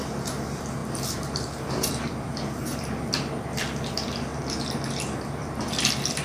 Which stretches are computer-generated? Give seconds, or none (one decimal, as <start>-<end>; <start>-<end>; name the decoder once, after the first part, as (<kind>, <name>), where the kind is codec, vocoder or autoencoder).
0.0-4.3 (vocoder, BigVGAN v2); 4.9-6.2